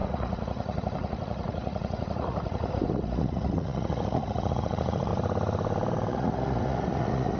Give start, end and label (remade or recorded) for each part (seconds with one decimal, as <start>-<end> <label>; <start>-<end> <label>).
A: 0.0-5.1 remade; 5.1-6.1 recorded; 6.1-7.4 remade